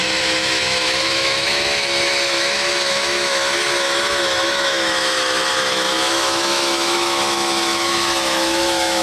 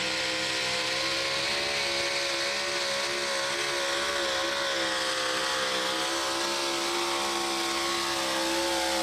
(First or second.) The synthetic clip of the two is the first